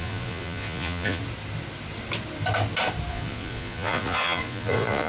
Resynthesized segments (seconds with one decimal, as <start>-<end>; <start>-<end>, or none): 0.0-1.2; 3.1-5.1